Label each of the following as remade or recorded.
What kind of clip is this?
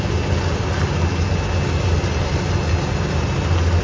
recorded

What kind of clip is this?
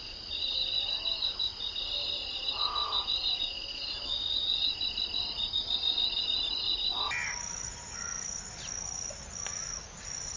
recorded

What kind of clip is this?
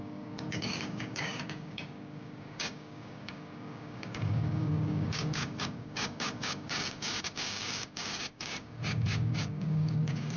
remade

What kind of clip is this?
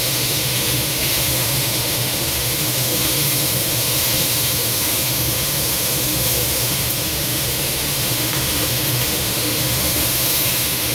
remade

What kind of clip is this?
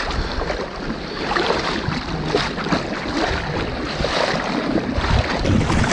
recorded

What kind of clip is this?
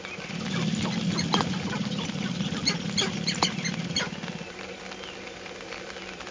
recorded